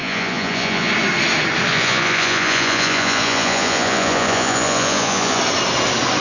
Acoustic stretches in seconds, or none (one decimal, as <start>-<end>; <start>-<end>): 0.9-1.7; 5.4-6.2